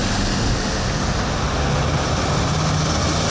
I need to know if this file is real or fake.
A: real